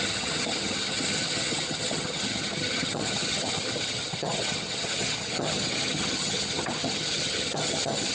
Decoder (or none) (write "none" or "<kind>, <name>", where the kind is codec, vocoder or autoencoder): vocoder, HiFi-GAN